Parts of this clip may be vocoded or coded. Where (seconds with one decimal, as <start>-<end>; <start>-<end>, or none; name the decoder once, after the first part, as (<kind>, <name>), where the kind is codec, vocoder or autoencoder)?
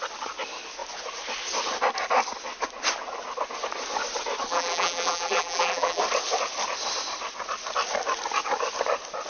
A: 4.5-6.0 (vocoder, BigVGAN v2)